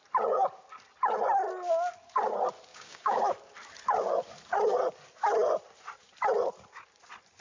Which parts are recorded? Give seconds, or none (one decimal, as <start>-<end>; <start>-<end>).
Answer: 0.0-2.7; 3.2-7.4